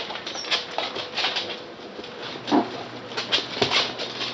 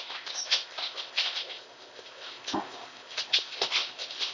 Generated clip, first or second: second